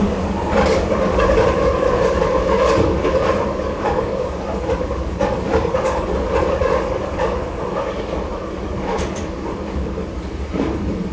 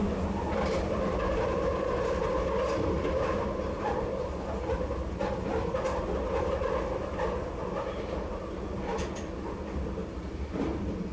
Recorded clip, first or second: second